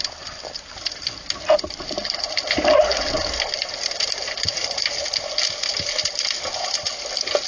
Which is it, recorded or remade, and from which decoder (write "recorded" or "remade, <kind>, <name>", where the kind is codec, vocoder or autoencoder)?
recorded